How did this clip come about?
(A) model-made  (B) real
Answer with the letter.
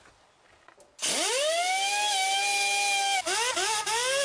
B